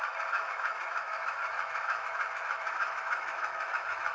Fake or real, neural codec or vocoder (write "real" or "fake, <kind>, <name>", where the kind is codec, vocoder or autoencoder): fake, autoencoder, DAC-VAE